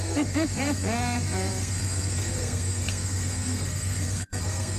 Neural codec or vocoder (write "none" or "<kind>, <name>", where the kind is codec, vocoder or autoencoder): codec, SNAC